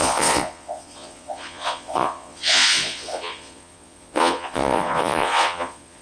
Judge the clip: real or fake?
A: fake